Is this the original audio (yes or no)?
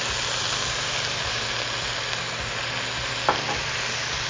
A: yes